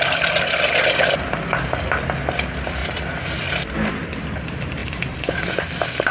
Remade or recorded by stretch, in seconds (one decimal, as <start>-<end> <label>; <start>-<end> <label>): 0.0-4.8 recorded; 4.8-6.1 remade